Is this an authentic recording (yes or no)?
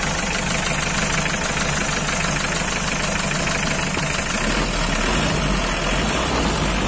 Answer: yes